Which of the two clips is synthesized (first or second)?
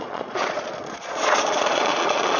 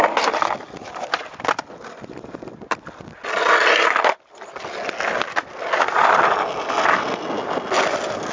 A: first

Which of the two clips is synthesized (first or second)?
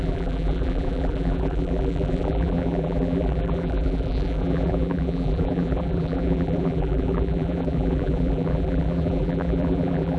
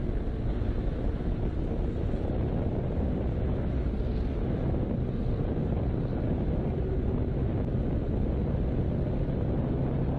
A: first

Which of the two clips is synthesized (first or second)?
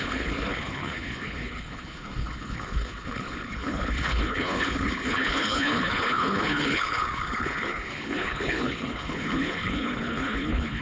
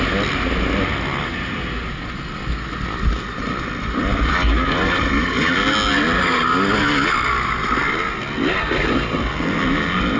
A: first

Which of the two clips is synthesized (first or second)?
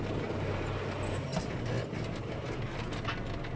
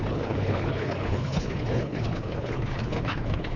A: second